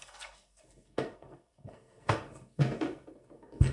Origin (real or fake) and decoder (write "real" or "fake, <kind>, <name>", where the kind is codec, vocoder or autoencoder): fake, codec, SNAC